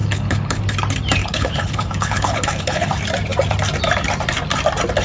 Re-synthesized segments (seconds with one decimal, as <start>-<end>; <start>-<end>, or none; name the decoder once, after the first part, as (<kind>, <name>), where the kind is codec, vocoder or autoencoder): 0.0-0.6 (codec, HILCodec); 1.2-2.9